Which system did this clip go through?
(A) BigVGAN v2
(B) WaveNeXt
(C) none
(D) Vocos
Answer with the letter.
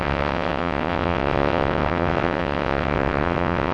B